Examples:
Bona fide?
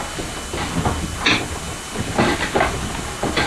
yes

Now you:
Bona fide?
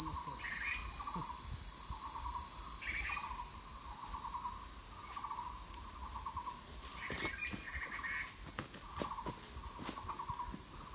yes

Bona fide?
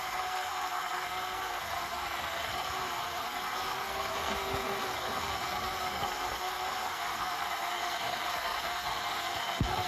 no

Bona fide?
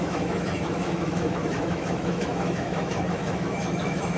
no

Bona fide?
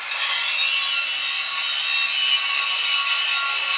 yes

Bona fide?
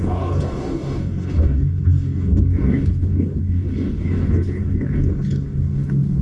no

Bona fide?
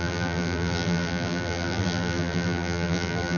no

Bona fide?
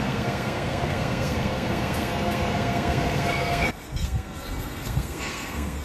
no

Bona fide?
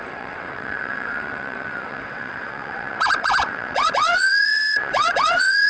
no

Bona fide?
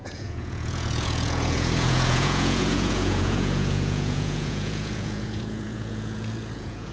no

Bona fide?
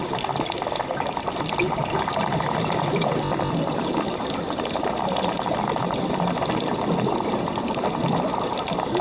no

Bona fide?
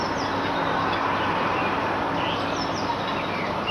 yes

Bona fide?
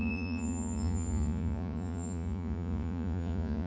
no